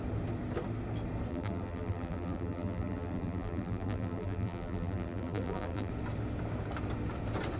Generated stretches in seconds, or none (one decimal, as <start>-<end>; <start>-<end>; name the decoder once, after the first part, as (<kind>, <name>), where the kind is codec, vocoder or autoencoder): 1.3-5.9 (vocoder, BigVGAN v2)